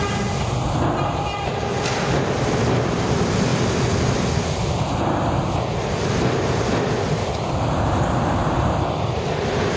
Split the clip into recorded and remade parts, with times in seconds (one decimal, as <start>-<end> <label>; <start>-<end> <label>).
0.0-9.8 recorded